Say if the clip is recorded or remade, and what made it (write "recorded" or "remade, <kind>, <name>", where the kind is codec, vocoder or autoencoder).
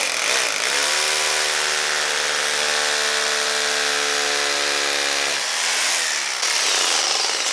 recorded